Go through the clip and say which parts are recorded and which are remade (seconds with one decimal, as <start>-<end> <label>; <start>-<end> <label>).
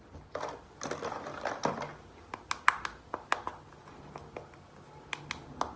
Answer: 0.0-5.8 recorded